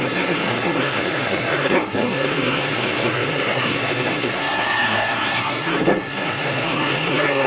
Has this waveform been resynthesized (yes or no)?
yes